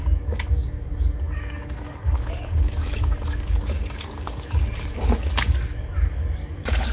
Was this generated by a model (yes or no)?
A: yes